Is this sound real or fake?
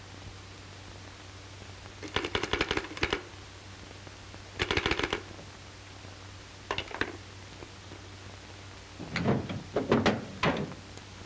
real